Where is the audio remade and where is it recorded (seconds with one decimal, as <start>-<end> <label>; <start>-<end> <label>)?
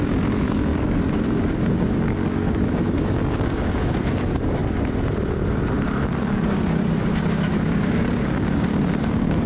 0.0-4.6 remade; 4.6-6.2 recorded; 6.2-9.5 remade